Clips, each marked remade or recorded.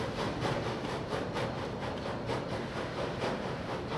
remade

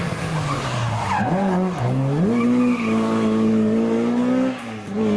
remade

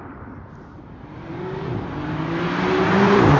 remade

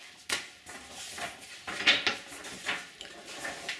recorded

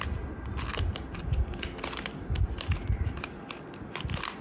recorded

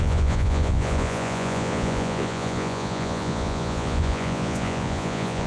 remade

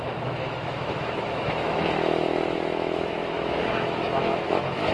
remade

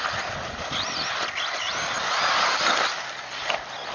recorded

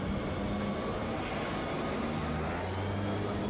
recorded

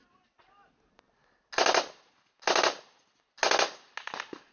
recorded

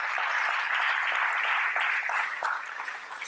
recorded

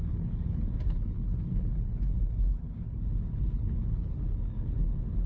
remade